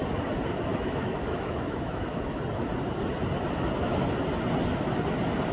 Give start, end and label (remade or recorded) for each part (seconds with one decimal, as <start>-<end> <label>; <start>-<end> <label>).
0.0-0.7 recorded; 0.7-2.2 remade; 2.2-5.5 recorded